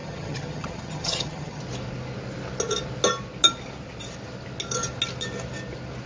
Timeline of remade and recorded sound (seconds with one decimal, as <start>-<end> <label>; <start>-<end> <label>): 0.0-1.6 remade; 1.6-6.1 recorded